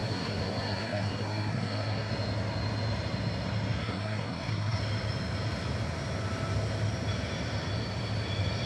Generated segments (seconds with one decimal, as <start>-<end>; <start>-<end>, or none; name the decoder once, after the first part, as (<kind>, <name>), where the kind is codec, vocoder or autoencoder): 0.0-2.1 (codec, SNAC); 3.8-4.8

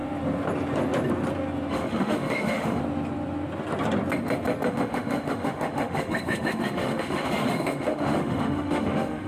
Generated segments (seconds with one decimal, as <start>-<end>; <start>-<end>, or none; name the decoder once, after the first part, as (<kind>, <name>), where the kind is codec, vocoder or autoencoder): 1.7-2.8 (autoencoder, DAC-VAE); 4.7-9.3